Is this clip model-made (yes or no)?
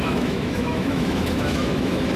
yes